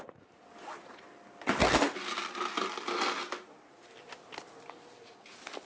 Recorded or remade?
recorded